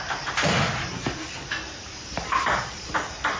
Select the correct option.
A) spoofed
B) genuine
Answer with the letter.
A